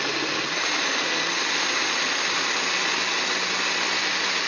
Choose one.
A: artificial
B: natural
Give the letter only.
B